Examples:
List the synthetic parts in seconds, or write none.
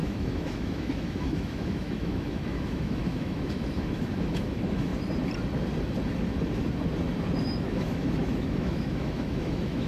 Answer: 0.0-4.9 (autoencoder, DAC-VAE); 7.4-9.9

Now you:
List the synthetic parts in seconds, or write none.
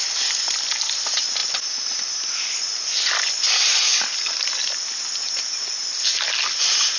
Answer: none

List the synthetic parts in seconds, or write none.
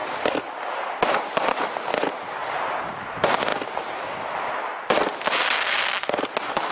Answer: none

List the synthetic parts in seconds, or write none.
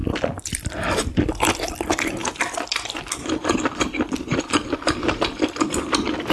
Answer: 4.3-5.2 (vocoder, BigVGAN v2)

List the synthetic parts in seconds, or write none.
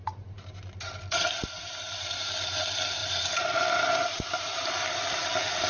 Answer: 0.0-0.6 (vocoder, BigVGAN v2); 1.4-2.3; 3.0-4.7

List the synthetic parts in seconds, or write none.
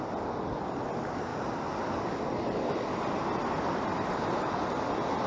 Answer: none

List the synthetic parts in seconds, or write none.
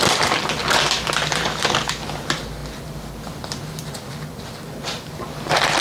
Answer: 0.0-5.8 (vocoder, BigVGAN v2)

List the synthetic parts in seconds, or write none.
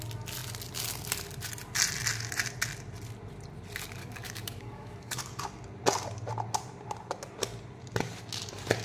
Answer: 4.0-5.4 (codec, DAC)